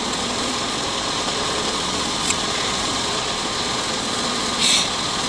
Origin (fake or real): fake